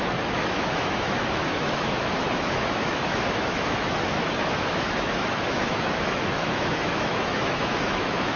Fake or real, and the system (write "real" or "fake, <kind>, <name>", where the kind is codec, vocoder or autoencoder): fake, autoencoder, DAC-VAE